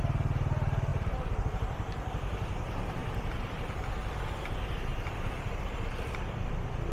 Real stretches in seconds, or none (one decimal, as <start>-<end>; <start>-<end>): 0.0-0.9; 2.1-4.9; 6.5-6.9